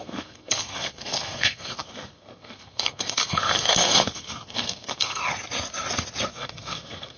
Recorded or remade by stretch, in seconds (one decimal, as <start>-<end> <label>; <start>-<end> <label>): 0.0-5.2 remade; 5.2-6.3 recorded; 6.3-7.2 remade